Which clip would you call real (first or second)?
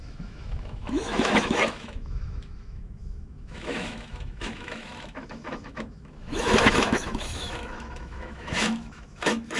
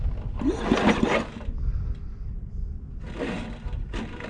second